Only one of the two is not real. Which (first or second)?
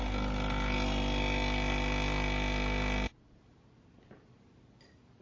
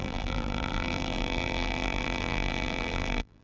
second